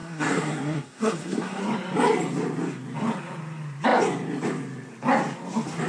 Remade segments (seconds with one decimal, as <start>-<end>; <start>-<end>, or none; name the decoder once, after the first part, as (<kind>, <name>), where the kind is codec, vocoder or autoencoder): 0.0-1.6 (codec, SNAC)

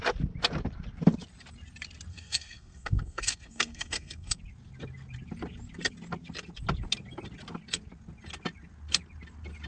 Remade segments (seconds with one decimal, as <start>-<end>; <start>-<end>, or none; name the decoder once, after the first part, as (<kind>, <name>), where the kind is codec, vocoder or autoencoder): 2.1-4.4 (codec, SNAC)

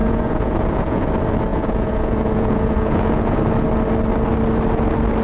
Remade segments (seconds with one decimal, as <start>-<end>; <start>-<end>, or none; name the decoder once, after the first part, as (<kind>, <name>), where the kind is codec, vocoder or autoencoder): 0.0-1.1 (vocoder, Vocos); 1.5-3.4